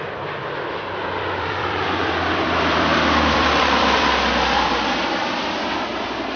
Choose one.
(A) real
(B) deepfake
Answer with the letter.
B